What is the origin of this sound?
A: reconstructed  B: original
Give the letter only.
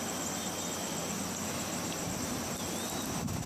B